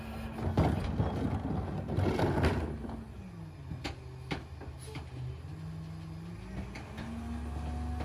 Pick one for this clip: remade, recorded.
recorded